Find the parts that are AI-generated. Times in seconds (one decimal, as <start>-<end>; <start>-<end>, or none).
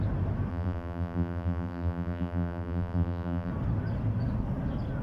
0.5-3.5